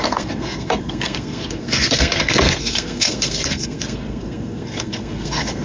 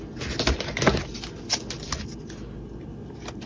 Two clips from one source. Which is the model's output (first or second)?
first